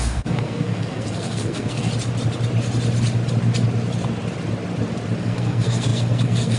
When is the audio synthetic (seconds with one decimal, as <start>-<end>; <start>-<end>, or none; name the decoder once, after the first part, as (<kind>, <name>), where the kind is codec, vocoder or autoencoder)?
0.0-1.9 (codec, SNAC); 5.2-6.6